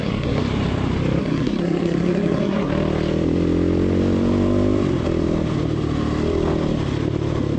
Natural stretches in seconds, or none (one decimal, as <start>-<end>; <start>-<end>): 0.4-1.2; 2.7-7.6